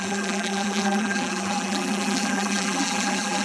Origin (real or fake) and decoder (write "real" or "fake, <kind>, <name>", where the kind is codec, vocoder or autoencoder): fake, vocoder, BigVGAN v2